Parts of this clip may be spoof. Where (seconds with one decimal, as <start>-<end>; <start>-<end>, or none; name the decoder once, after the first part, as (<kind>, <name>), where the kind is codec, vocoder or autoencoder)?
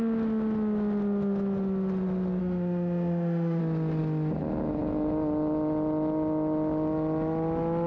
2.4-3.6 (autoencoder, DAC-VAE)